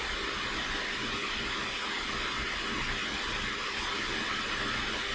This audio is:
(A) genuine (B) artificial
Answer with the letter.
A